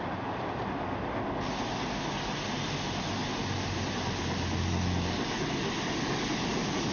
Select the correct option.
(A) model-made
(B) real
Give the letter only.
B